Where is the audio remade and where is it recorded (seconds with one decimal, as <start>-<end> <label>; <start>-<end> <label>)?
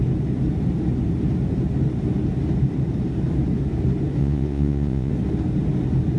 0.0-4.2 recorded; 4.2-5.1 remade; 5.1-6.2 recorded